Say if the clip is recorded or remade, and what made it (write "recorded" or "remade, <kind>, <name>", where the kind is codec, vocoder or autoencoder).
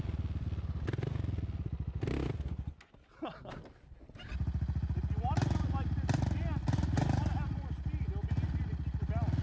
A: recorded